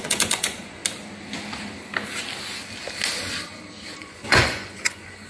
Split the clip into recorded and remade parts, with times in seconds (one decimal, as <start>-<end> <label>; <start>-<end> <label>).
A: 0.0-0.8 remade; 0.8-4.0 recorded; 4.0-5.3 remade